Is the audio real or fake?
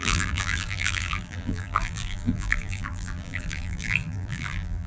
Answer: fake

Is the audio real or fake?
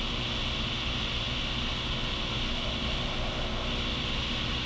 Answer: real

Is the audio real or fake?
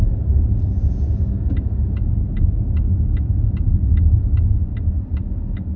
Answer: real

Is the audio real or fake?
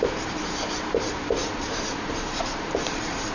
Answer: fake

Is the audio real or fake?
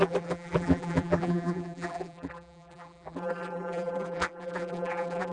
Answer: fake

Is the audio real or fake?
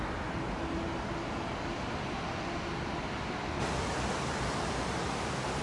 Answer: real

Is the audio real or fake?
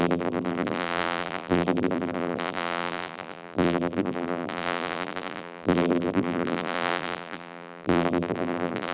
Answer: fake